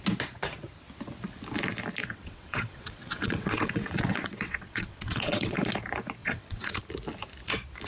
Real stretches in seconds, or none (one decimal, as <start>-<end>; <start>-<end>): 0.0-2.0; 5.7-6.2; 6.8-7.9